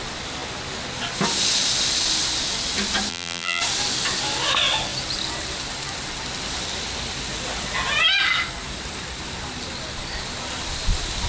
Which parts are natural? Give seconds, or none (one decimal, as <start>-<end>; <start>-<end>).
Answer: 0.0-3.1; 3.6-11.3